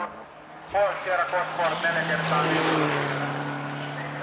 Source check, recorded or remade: recorded